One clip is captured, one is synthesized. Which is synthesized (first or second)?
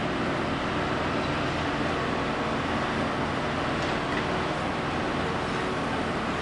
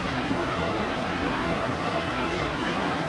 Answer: second